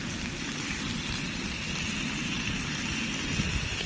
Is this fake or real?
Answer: real